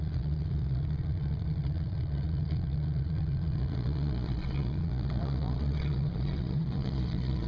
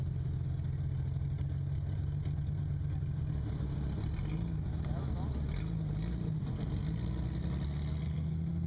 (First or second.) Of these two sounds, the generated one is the first